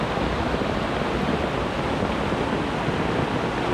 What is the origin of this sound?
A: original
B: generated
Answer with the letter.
A